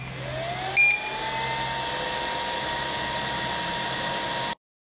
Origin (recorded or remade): recorded